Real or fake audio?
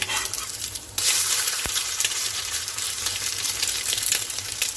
fake